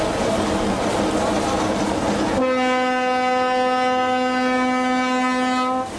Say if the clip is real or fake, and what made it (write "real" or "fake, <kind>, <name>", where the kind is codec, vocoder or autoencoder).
real